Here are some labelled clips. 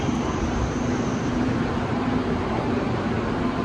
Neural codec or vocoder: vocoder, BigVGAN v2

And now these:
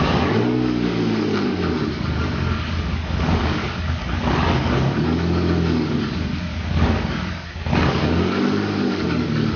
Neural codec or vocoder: codec, DAC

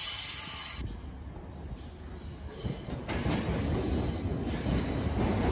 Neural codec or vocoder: none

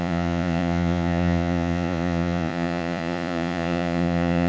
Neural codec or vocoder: vocoder, Vocos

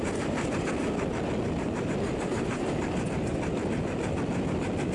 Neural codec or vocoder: none